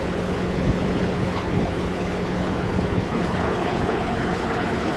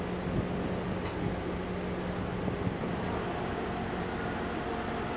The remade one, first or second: first